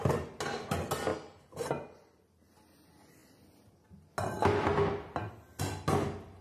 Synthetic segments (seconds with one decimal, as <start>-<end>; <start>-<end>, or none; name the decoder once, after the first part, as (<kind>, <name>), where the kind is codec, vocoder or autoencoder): 1.1-2.5 (vocoder, BigVGAN v2)